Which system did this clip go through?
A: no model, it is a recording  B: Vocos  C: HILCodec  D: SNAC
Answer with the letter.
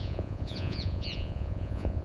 B